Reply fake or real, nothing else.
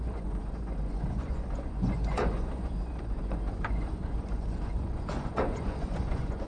fake